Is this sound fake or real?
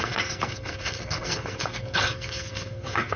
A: fake